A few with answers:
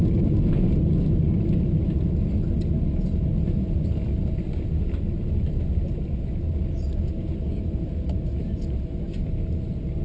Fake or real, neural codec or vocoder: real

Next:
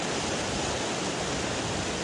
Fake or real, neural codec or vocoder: real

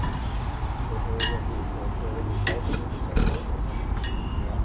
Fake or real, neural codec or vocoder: real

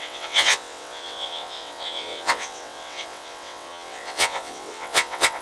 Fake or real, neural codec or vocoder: fake, vocoder, WaveNeXt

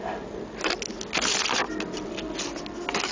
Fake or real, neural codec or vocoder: real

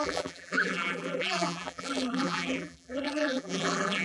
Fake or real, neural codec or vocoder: fake, vocoder, BigVGAN v2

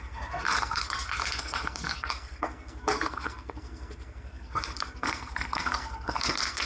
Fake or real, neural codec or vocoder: fake, codec, SNAC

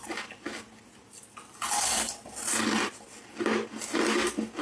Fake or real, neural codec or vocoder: real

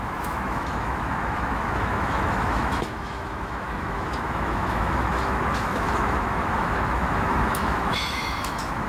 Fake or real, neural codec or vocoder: fake, autoencoder, DAC-VAE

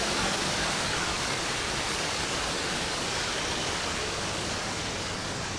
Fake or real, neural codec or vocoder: fake, codec, DAC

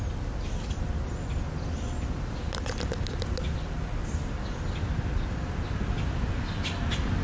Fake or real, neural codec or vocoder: real